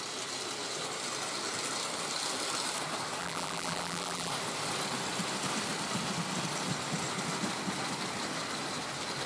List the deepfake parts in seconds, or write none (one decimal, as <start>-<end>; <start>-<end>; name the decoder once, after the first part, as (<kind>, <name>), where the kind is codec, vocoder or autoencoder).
3.2-4.3 (vocoder, BigVGAN v2)